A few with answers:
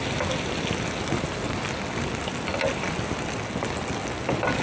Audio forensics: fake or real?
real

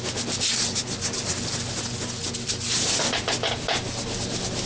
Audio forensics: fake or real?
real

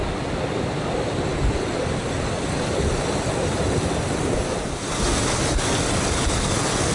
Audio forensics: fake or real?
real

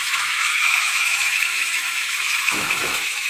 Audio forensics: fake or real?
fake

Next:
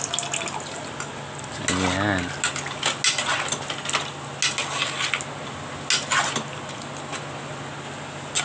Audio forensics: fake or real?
real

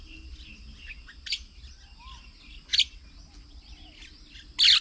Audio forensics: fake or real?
real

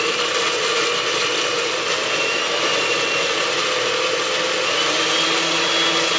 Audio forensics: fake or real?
real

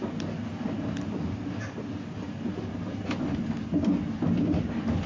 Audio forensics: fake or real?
real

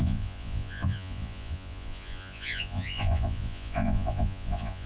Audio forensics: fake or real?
fake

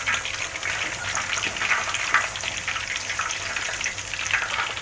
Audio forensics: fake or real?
real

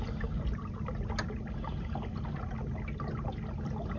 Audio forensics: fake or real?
real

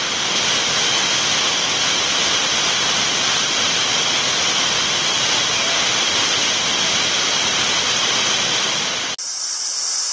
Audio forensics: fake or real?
real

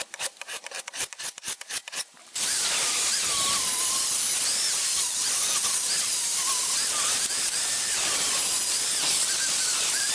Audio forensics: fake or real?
fake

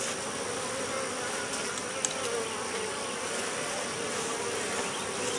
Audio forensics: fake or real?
real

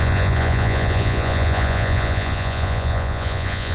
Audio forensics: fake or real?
fake